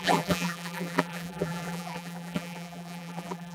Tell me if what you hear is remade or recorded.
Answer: remade